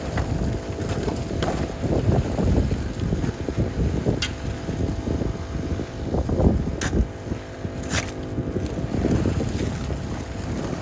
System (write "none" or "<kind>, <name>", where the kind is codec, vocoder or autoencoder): none